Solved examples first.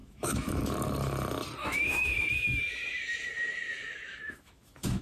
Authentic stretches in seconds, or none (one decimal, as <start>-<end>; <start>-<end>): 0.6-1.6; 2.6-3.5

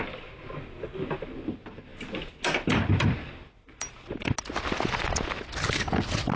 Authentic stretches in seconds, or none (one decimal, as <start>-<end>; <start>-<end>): 0.0-6.4

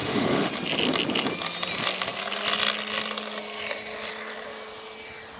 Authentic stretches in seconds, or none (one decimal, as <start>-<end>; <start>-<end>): 0.5-5.4

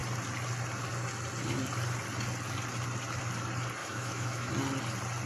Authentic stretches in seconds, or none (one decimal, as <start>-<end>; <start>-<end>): 0.0-3.8; 4.5-5.3